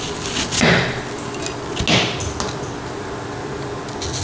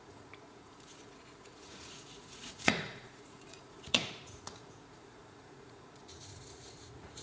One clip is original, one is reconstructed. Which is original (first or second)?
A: first